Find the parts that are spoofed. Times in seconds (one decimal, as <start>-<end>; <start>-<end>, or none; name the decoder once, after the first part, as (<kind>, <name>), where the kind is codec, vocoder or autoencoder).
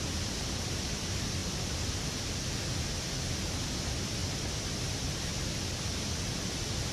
none